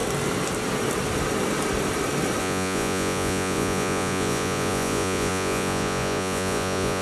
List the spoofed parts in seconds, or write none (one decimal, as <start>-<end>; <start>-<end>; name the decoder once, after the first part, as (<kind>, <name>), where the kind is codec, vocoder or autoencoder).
2.4-7.0 (vocoder, Vocos)